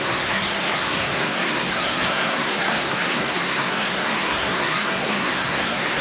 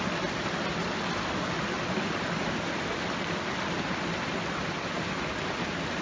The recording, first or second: second